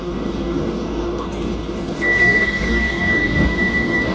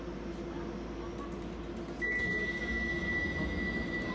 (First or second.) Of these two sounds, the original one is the second